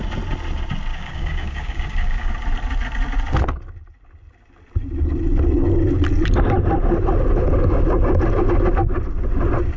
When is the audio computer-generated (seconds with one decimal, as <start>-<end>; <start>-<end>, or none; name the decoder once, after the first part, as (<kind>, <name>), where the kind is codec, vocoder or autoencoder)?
0.9-2.3 (codec, DAC)